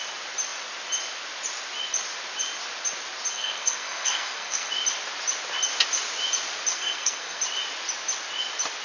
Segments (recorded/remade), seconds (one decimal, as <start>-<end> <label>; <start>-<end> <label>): 0.0-3.3 recorded; 3.3-4.7 remade; 4.7-6.7 recorded; 6.7-7.4 remade; 7.4-8.8 recorded